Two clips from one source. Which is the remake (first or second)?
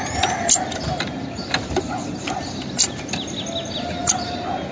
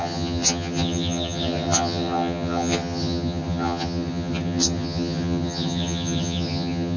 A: second